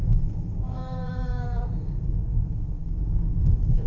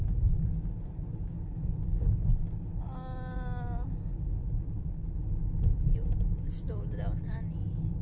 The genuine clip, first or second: second